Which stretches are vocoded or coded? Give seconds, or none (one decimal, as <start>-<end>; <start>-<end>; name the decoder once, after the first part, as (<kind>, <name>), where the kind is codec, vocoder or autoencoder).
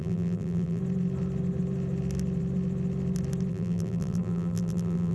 0.0-0.8 (vocoder, BigVGAN v2); 3.5-5.1